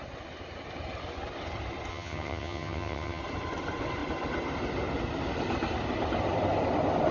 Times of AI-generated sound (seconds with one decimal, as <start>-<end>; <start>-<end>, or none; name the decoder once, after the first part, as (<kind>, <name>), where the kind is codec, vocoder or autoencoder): 1.9-3.2 (vocoder, HiFi-GAN)